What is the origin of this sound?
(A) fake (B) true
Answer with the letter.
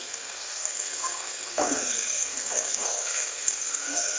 A